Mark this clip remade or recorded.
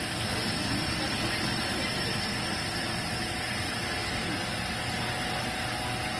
recorded